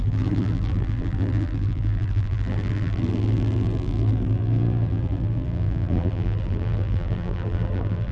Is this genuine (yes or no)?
no